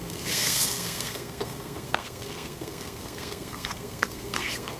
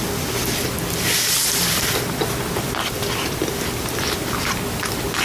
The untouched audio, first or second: second